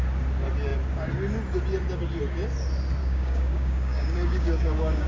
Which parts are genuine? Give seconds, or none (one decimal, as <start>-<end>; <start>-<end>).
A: 0.0-3.0